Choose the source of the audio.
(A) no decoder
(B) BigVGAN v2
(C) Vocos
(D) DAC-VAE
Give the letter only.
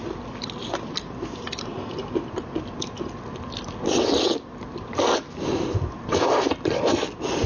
B